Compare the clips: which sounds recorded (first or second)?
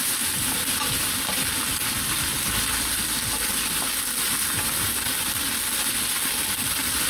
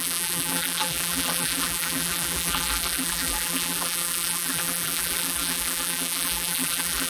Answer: first